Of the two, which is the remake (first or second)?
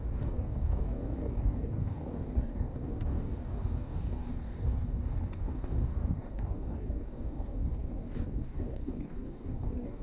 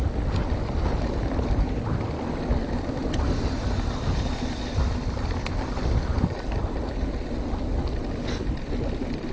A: first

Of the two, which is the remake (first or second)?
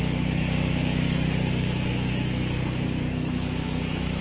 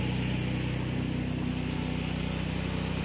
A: first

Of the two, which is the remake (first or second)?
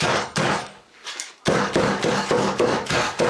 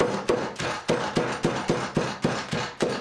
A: first